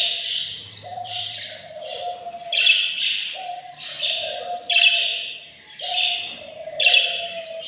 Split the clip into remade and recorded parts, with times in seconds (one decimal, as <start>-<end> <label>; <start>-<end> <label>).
0.0-0.9 recorded; 0.9-1.9 remade; 1.9-2.8 recorded; 2.8-3.9 remade; 3.9-7.7 recorded